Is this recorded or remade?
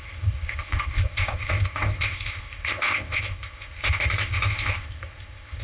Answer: remade